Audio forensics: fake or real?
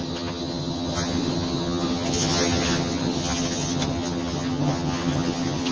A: fake